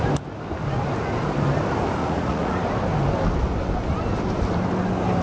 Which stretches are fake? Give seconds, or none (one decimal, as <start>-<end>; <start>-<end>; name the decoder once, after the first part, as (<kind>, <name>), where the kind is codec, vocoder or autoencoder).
2.0-2.6 (vocoder, Vocos)